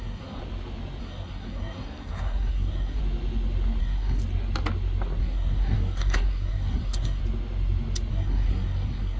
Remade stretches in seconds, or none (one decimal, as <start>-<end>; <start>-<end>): 0.0-0.4; 1.0-3.0; 3.8-4.2; 5.2-7.2; 8.1-9.2